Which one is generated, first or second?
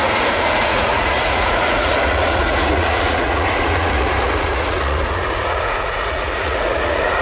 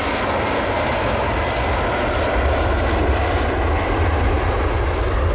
first